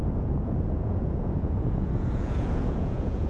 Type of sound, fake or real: fake